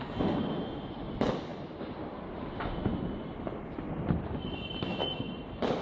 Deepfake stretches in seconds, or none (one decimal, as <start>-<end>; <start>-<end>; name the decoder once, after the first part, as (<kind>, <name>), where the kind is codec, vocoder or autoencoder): none